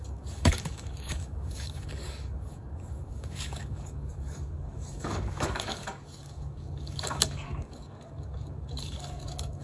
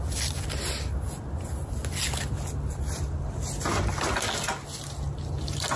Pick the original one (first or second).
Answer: second